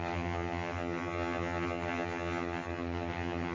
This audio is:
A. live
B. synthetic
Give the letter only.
B